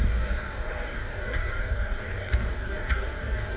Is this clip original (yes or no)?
no